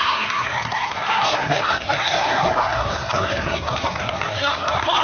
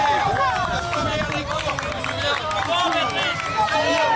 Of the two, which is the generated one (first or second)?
first